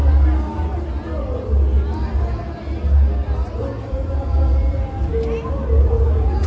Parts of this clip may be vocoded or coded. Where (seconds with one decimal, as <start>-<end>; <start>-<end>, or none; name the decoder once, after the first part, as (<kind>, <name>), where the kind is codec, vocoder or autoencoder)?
3.9-5.1 (vocoder, Vocos); 5.8-6.5